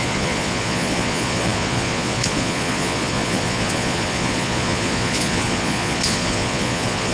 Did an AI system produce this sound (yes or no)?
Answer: yes